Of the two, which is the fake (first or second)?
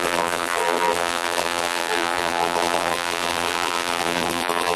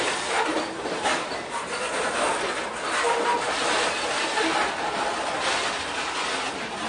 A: first